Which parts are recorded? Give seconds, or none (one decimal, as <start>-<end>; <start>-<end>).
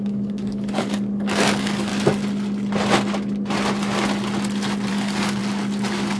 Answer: 1.9-4.9; 5.4-6.2